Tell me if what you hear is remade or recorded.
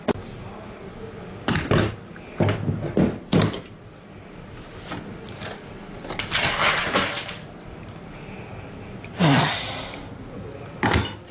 recorded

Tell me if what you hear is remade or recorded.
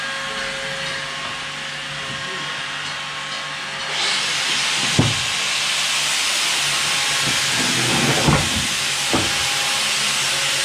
recorded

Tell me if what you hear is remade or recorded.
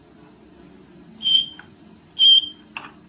recorded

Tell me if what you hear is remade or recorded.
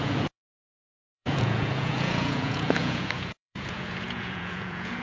remade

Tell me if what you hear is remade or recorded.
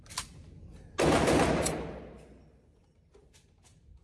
recorded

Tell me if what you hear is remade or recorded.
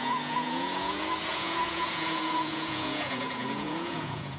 remade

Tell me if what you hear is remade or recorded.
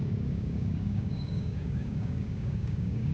remade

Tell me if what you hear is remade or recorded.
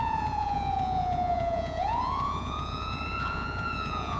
remade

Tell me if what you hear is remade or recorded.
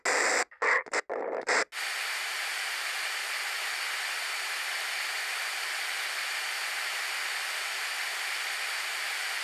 recorded